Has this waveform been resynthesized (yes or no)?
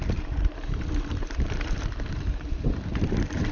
yes